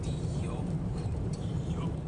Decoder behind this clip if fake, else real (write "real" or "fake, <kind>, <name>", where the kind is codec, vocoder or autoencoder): fake, vocoder, BigVGAN v2